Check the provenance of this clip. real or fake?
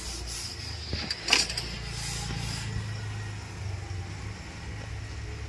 real